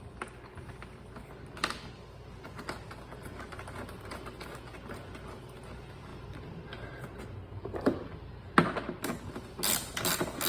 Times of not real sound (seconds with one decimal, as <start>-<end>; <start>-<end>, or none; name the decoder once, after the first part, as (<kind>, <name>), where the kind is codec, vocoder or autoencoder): none